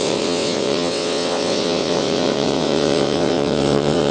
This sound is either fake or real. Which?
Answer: fake